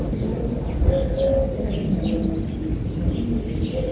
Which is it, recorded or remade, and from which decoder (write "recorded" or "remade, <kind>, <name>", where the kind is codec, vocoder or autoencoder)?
recorded